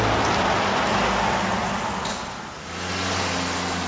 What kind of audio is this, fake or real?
real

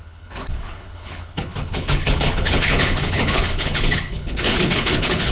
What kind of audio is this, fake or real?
fake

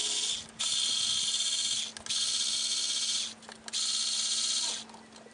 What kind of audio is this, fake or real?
real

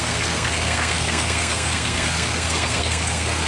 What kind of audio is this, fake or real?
fake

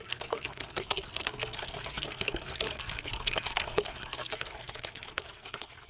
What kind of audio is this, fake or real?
fake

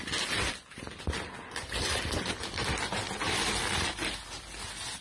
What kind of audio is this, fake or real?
real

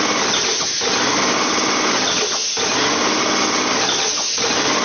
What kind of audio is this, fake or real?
real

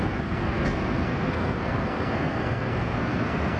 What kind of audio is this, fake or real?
fake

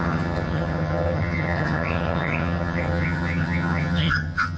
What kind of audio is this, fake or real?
fake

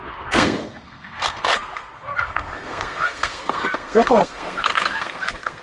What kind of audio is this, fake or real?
fake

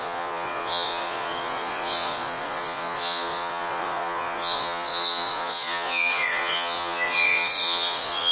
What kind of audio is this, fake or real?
fake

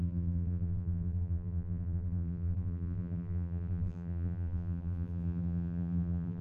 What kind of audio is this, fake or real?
fake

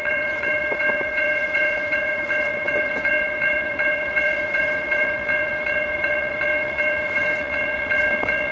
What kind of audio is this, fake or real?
fake